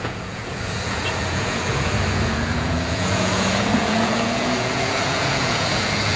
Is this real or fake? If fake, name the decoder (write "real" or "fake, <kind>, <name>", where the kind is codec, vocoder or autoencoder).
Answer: fake, vocoder, Vocos